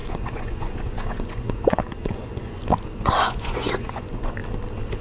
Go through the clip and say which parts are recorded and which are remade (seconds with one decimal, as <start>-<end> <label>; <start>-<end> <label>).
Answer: 0.0-2.6 remade; 2.6-3.2 recorded; 3.2-4.4 remade; 4.4-5.0 recorded

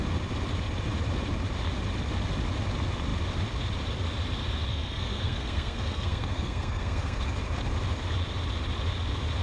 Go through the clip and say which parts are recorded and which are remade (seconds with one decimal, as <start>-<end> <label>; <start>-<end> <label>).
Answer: 0.0-4.7 recorded; 4.7-7.3 remade; 7.3-9.4 recorded

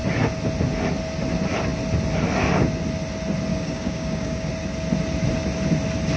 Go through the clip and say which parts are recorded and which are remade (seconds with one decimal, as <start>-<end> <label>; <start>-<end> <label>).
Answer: 0.0-3.5 recorded; 3.5-4.5 remade; 4.5-6.2 recorded

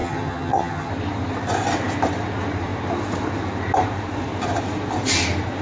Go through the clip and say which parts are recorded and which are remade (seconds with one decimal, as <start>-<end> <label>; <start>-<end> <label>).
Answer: 0.0-0.9 remade; 0.9-5.6 recorded

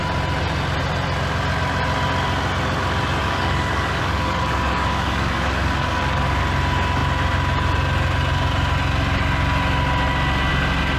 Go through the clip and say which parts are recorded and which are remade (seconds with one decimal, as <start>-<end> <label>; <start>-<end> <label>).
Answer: 0.0-3.2 recorded; 3.2-6.4 remade; 6.4-11.0 recorded